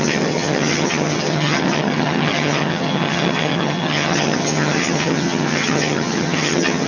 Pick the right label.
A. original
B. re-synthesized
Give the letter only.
B